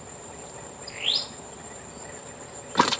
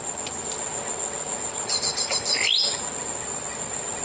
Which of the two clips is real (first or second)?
second